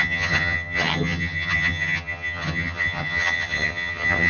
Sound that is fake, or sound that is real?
fake